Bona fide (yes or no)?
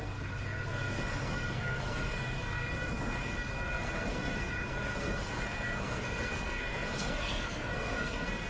no